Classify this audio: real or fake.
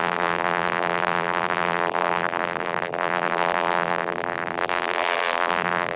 fake